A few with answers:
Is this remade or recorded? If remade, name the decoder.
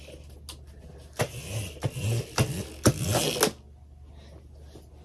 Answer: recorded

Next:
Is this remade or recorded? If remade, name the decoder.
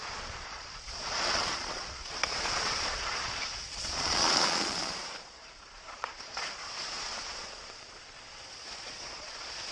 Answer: remade, vocoder, Vocos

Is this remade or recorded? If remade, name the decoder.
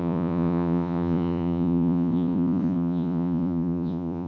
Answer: remade, vocoder, Vocos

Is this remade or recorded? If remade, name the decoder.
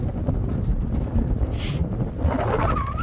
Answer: recorded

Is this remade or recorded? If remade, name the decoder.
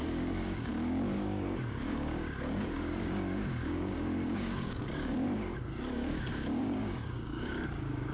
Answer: remade, codec, DAC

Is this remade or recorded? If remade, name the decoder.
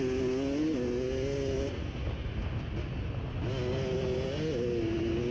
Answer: recorded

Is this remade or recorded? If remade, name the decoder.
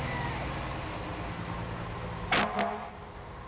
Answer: recorded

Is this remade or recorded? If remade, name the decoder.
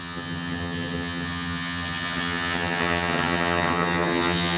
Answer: remade, vocoder, HiFi-GAN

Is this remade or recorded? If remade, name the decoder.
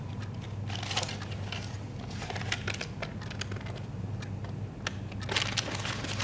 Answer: recorded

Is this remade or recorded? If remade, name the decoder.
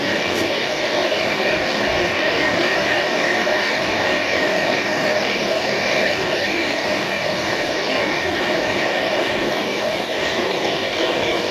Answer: remade, codec, DAC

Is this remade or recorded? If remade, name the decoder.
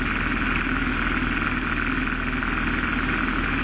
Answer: recorded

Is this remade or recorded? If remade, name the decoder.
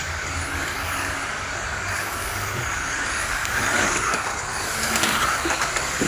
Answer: remade, codec, DAC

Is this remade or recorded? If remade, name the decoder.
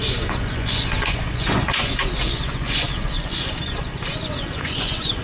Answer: remade, vocoder, Vocos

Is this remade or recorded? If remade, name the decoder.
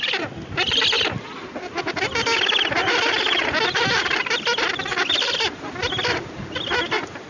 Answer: recorded